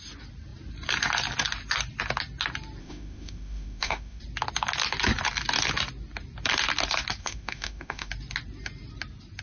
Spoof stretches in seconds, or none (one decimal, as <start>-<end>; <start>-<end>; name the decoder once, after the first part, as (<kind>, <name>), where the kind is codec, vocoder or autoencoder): 2.8-4.2 (autoencoder, DAC-VAE); 7.2-8.1